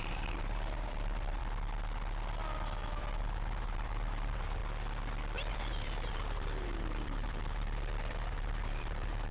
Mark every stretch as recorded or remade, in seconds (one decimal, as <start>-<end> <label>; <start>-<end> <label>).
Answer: 0.0-1.4 remade; 1.4-2.9 recorded; 2.9-4.6 remade; 4.6-5.5 recorded; 5.5-9.3 remade